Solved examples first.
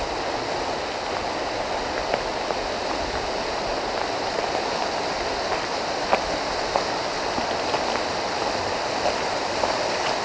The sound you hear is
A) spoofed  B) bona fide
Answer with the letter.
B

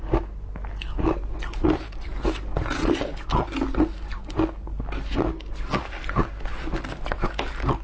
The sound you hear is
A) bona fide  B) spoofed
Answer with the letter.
A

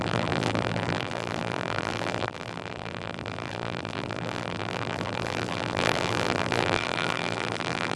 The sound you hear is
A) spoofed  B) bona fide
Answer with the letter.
A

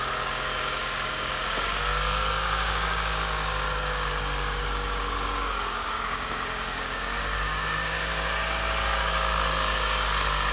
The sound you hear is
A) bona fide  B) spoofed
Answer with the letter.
B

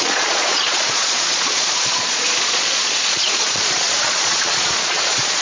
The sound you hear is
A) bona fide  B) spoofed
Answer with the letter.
B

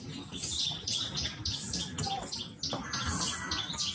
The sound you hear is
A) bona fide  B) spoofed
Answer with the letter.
A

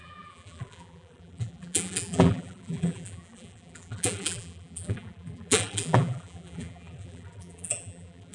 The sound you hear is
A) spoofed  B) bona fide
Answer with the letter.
A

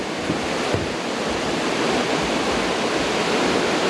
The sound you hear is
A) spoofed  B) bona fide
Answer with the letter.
B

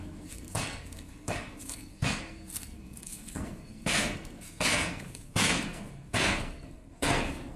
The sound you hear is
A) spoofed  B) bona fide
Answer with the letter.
A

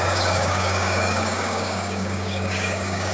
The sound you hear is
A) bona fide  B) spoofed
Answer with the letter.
B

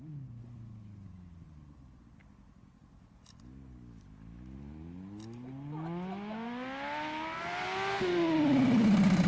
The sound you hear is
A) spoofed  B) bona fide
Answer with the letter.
B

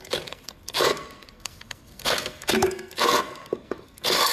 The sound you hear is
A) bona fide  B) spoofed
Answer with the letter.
B